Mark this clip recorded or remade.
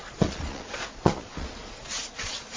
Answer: remade